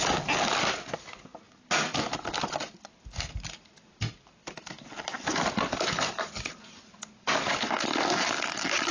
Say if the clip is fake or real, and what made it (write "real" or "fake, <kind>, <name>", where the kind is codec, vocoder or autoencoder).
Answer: real